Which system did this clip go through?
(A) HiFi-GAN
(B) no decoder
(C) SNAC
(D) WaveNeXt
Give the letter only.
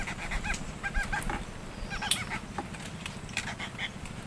B